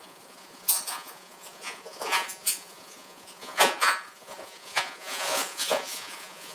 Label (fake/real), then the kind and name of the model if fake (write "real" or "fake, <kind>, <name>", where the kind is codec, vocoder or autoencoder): fake, vocoder, Vocos